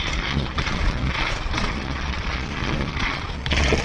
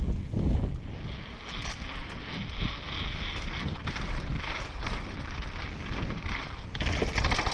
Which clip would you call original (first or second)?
second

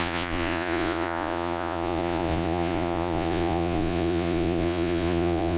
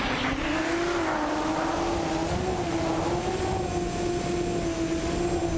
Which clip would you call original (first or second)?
second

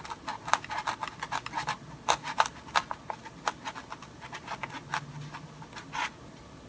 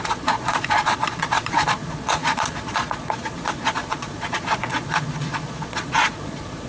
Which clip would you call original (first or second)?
first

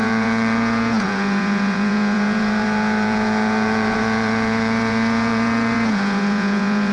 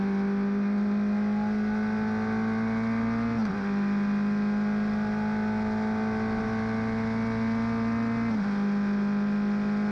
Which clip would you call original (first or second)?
second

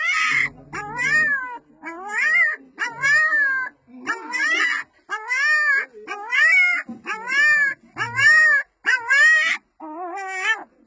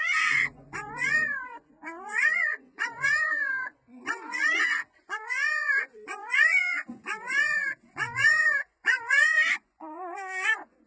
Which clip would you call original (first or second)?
first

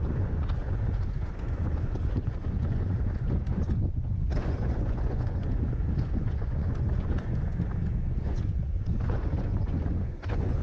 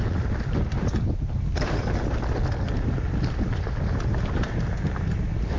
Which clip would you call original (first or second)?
second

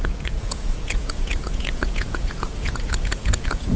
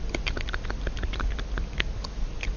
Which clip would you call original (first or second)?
second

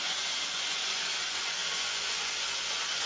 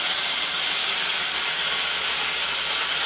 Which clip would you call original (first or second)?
second